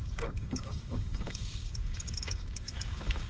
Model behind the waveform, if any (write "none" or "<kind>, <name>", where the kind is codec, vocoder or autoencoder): codec, DAC